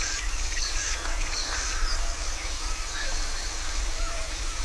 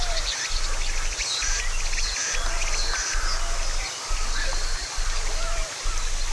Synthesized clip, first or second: first